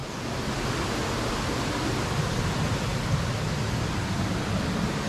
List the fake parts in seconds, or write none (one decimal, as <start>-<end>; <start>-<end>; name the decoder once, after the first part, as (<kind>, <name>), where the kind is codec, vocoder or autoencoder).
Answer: none